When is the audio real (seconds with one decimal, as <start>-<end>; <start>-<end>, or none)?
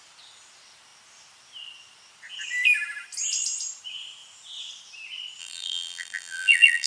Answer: 0.0-5.4